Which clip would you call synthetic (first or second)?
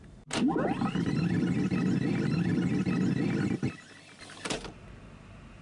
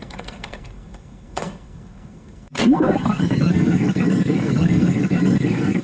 second